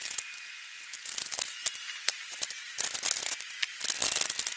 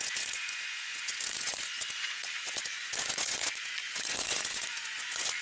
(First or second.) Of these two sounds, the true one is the first